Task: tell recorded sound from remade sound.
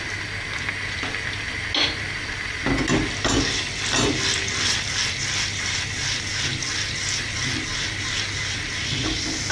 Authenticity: recorded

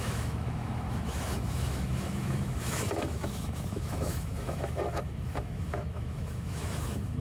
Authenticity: remade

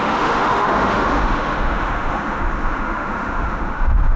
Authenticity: remade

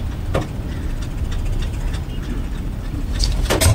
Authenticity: recorded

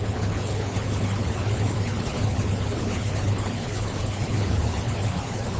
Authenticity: remade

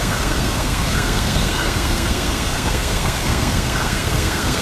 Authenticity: remade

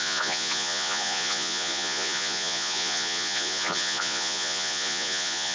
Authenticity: remade